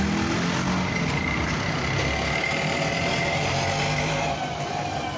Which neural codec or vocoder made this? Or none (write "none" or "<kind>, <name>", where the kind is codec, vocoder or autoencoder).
none